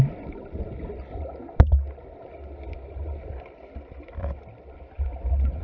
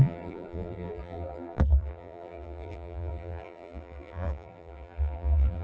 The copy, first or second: second